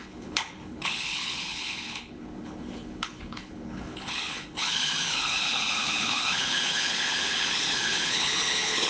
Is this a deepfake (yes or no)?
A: yes